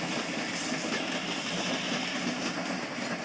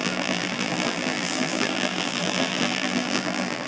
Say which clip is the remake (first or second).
second